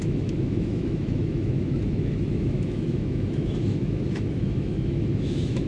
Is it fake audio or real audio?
fake